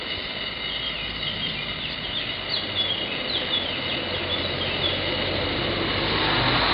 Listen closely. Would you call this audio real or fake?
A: real